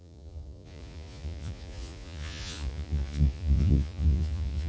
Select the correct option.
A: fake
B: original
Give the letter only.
A